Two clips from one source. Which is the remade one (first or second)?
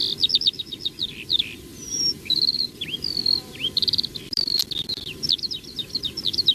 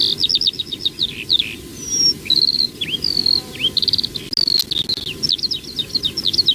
first